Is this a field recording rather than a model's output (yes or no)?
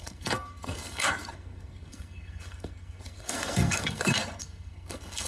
no